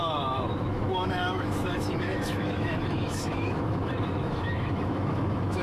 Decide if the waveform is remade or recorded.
remade